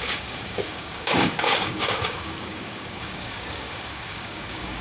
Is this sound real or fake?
fake